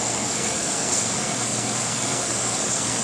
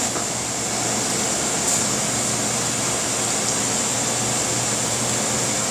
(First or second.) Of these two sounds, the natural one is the second